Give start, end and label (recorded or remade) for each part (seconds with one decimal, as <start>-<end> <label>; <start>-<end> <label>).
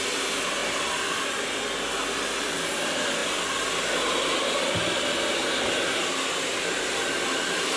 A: 0.0-7.8 recorded